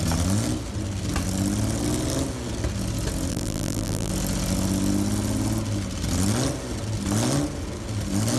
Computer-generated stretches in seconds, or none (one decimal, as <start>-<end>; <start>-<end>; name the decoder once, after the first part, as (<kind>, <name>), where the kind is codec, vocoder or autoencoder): 3.3-4.1 (vocoder, BigVGAN v2)